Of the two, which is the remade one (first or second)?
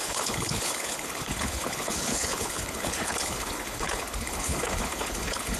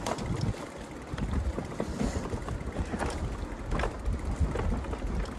first